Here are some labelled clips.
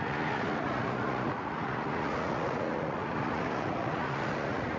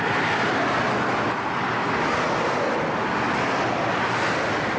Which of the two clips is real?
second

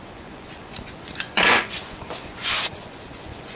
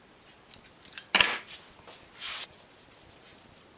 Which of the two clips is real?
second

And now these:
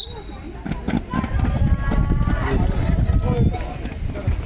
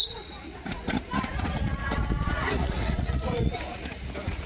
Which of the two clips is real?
first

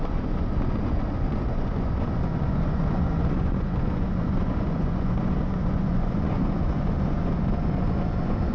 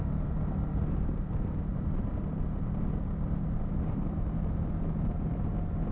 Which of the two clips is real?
second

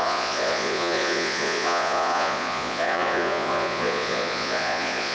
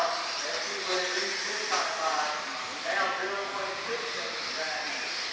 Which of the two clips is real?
second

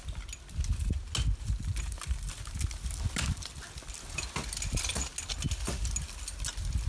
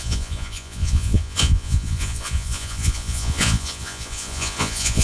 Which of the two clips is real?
first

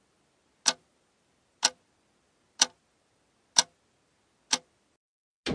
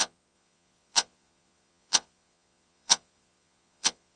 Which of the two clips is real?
first